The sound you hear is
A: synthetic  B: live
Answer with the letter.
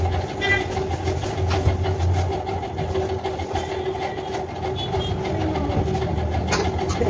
B